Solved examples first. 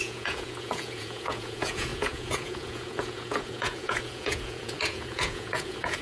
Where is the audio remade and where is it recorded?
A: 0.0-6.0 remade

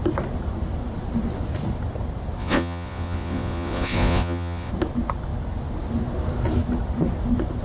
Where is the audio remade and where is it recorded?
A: 0.0-2.4 recorded; 2.4-4.7 remade; 4.7-7.6 recorded